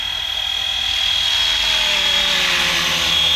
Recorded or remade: recorded